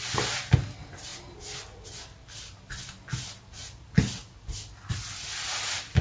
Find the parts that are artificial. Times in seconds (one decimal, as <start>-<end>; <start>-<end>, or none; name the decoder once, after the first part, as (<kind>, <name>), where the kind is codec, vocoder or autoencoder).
none